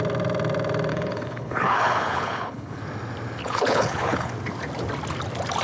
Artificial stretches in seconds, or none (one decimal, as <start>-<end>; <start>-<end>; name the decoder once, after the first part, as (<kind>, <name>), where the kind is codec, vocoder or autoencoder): 0.9-2.8 (codec, HILCodec); 3.4-4.3